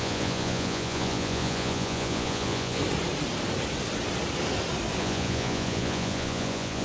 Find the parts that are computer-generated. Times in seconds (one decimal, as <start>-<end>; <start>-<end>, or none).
0.0-2.8; 5.0-6.8